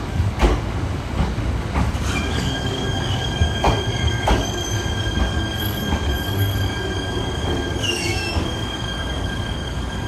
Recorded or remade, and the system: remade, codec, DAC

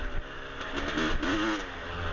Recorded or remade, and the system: recorded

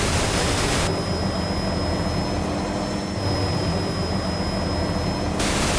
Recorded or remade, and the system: recorded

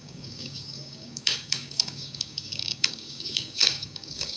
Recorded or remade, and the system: remade, codec, DAC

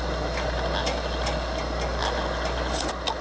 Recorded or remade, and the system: recorded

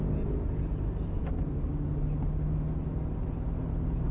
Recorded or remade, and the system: recorded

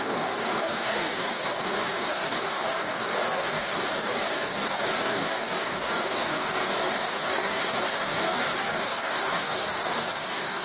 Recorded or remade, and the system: remade, codec, DAC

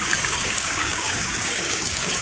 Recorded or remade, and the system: remade, codec, DAC